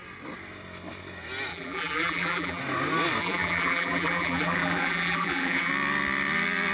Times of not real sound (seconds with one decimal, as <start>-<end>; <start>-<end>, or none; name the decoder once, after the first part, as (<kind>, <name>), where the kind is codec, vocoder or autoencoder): 1.5-2.6 (vocoder, BigVGAN v2); 3.2-5.7